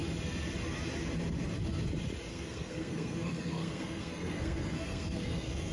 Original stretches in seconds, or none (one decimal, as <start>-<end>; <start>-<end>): 0.0-2.3